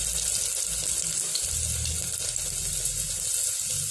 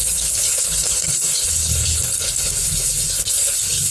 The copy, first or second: second